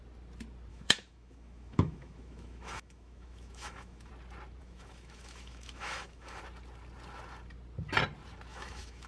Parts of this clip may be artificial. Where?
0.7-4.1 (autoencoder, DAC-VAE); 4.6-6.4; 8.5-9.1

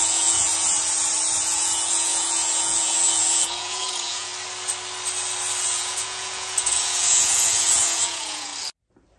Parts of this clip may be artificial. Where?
0.0-0.5 (vocoder, Vocos); 1.4-4.3; 5.6-8.5